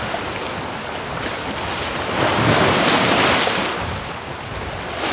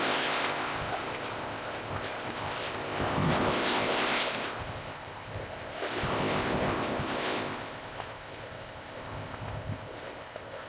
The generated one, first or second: second